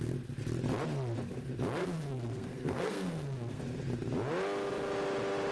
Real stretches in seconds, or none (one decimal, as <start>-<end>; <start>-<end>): 0.0-1.8; 3.6-5.5